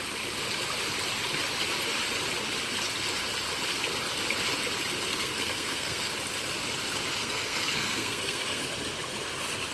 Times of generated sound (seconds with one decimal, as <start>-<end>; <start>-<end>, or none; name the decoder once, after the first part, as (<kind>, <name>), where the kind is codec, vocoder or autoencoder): 5.1-6.1 (codec, SNAC); 7.2-8.6